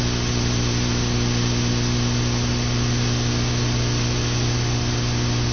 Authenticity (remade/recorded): recorded